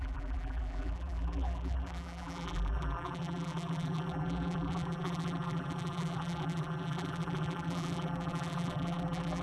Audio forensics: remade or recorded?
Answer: remade